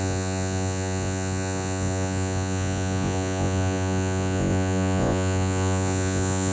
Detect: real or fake fake